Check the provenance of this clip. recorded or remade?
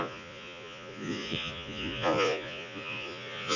remade